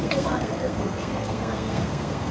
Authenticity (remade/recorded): remade